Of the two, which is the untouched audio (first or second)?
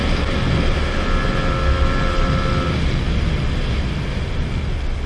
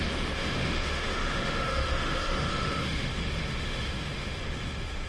first